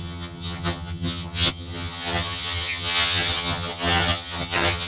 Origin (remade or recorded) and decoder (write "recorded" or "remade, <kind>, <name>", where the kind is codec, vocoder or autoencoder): remade, vocoder, HiFi-GAN